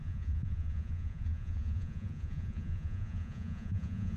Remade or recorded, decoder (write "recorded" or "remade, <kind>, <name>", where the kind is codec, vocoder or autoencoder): remade, vocoder, Vocos